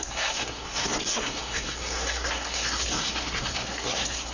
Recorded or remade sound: remade